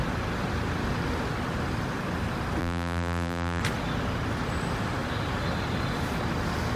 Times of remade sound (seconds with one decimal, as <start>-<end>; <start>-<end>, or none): 2.6-3.6